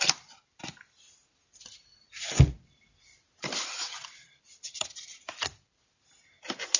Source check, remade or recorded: recorded